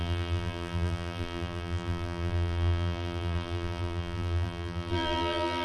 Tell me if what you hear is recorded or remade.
remade